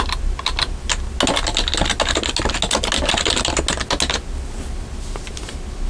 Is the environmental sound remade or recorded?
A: recorded